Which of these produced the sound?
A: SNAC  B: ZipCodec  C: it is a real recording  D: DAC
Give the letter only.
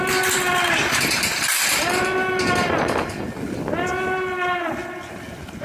C